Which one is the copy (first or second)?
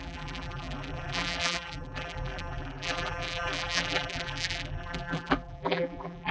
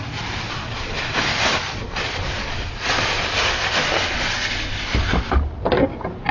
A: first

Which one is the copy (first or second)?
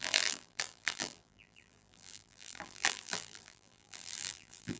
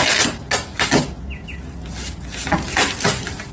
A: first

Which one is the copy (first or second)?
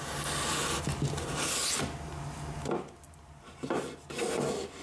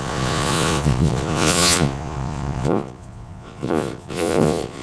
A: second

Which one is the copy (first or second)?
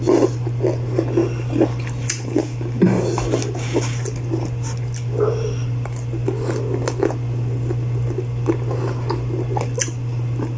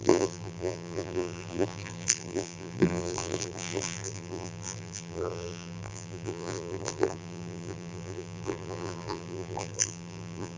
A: second